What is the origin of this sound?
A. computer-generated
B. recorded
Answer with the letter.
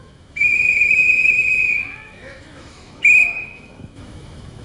A